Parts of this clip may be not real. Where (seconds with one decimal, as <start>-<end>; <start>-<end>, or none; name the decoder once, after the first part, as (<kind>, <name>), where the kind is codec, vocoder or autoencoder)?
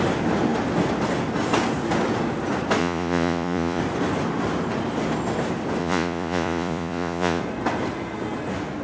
2.8-3.8 (vocoder, Vocos); 5.8-7.4